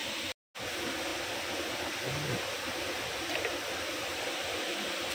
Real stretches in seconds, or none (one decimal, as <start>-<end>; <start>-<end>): 0.0-5.1